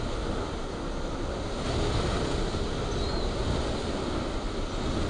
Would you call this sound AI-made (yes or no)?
no